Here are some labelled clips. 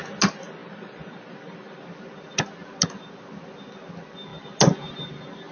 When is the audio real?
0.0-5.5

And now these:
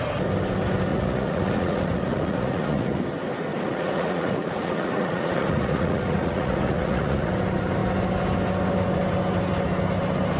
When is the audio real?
0.0-0.9; 3.0-3.5; 7.3-10.4

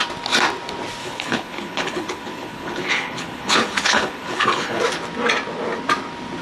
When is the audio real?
0.0-1.0; 4.8-6.4

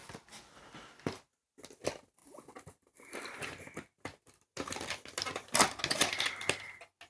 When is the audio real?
0.0-7.1